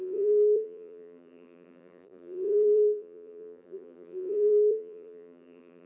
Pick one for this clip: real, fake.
fake